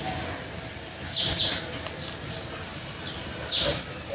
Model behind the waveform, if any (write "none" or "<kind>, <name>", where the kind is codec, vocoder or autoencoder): none